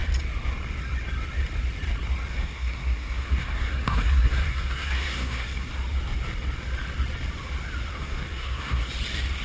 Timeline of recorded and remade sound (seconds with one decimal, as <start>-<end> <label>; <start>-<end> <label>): 0.0-2.3 recorded; 2.3-5.7 remade; 5.7-7.9 recorded; 7.9-8.9 remade; 8.9-9.4 recorded